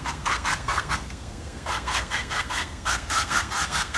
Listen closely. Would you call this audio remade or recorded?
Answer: remade